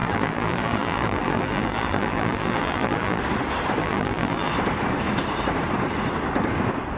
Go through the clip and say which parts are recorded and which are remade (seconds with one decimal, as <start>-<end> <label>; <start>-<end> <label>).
0.0-3.2 remade; 3.2-3.8 recorded; 3.8-4.5 remade; 4.5-7.0 recorded